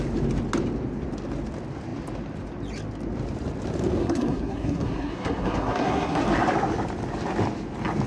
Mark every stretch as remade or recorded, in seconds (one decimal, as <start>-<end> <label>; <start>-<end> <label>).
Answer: 0.0-4.0 recorded; 4.0-6.2 remade; 6.2-8.1 recorded

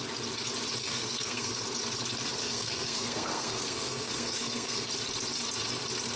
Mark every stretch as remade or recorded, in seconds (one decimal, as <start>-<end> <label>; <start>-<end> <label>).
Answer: 0.0-0.8 recorded; 0.8-1.5 remade; 1.5-2.4 recorded; 2.4-4.9 remade; 4.9-6.2 recorded

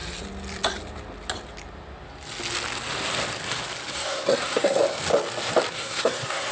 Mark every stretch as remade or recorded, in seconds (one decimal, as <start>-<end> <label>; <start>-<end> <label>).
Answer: 0.0-3.9 recorded; 3.9-4.8 remade; 4.8-5.7 recorded; 5.7-6.5 remade